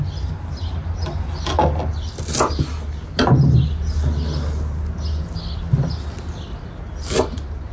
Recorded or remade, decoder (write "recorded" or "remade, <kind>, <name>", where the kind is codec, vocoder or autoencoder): recorded